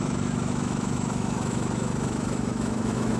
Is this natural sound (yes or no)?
no